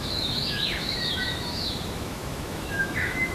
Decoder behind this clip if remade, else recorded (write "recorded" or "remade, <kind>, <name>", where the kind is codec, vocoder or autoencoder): remade, autoencoder, DAC-VAE